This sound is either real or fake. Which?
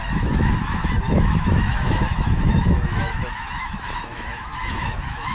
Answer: fake